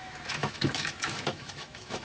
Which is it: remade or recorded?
remade